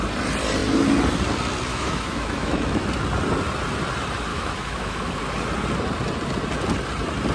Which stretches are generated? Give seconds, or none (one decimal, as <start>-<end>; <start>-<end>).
1.7-2.8; 4.3-5.2